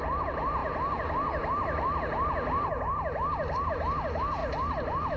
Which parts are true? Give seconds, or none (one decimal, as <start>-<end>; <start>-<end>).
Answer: 0.0-5.2